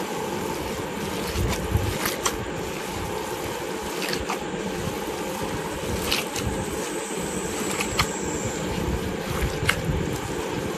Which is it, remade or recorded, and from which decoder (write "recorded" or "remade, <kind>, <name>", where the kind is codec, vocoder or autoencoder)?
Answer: recorded